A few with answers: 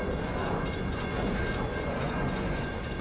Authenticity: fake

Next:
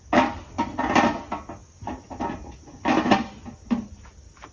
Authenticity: real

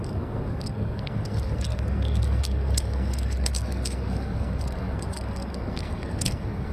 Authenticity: fake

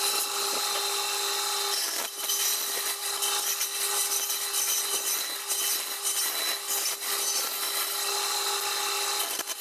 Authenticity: real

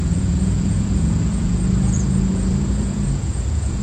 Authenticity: fake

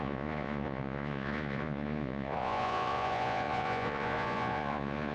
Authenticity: fake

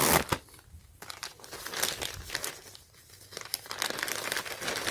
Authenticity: real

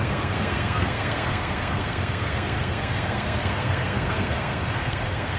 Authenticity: fake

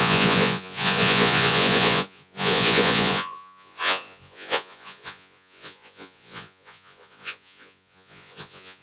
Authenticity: fake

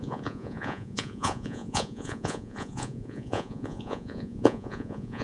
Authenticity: fake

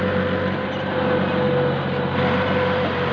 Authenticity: real